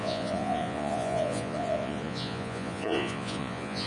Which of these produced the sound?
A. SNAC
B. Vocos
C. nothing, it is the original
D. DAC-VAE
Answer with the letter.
B